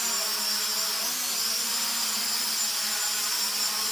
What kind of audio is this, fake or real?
real